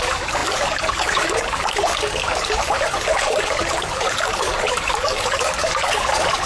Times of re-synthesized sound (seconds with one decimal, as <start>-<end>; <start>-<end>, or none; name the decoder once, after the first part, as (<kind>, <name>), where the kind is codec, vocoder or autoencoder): 0.0-6.5 (codec, DAC)